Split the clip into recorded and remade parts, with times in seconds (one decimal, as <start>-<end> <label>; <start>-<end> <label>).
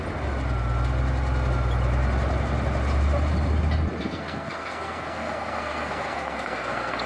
0.0-4.0 recorded; 4.0-7.1 remade